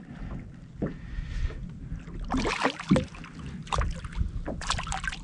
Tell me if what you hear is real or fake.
real